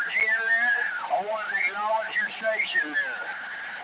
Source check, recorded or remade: recorded